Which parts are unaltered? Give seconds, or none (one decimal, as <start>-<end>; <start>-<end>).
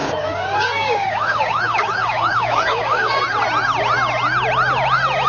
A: 3.2-5.3